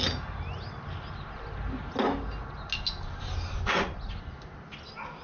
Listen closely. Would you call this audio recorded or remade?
recorded